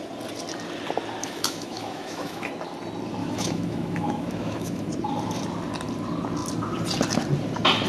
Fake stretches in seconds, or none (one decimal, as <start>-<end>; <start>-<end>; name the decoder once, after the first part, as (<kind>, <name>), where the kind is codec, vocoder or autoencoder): 1.2-2.5 (autoencoder, DAC-VAE); 3.2-4.9

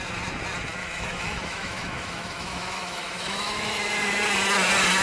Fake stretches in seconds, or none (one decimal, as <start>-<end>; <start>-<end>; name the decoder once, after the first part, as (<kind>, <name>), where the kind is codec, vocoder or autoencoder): 0.8-3.8 (autoencoder, DAC-VAE)

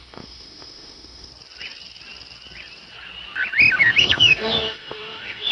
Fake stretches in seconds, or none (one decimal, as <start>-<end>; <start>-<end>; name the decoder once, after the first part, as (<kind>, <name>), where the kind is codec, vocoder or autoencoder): 0.0-1.3 (autoencoder, DAC-VAE); 4.0-5.5

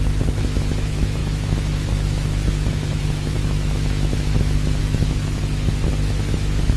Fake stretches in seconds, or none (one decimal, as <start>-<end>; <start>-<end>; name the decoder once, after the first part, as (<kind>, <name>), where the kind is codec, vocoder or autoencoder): 0.0-6.8 (autoencoder, DAC-VAE)

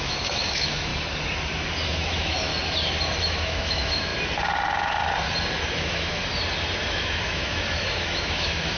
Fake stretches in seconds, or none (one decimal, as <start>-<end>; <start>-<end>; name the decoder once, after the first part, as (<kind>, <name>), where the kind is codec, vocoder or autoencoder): 0.0-0.9 (autoencoder, DAC-VAE); 1.9-2.5; 3.2-4.1; 5.8-6.2; 6.9-8.8

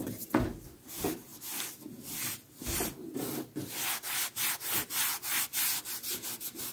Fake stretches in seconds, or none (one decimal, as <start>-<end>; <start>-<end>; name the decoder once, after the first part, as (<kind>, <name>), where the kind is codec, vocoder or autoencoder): none

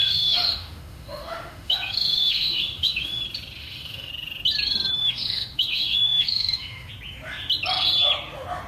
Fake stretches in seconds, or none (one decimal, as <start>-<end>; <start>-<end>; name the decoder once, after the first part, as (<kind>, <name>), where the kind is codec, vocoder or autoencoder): 0.0-3.2 (autoencoder, DAC-VAE); 3.6-4.1; 5.0-6.9

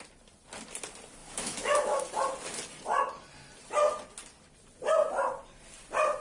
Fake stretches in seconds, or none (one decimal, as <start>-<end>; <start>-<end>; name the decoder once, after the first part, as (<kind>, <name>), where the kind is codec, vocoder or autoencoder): 1.2-2.0 (autoencoder, DAC-VAE)